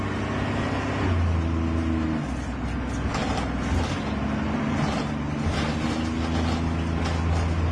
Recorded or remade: recorded